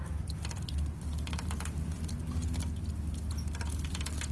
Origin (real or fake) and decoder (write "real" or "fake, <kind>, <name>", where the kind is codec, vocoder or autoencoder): real